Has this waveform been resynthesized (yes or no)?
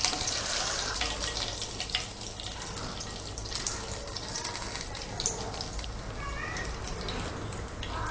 no